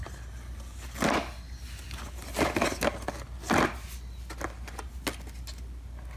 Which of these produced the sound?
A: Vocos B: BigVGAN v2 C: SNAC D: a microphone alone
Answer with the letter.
D